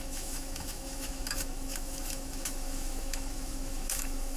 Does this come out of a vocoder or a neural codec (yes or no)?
yes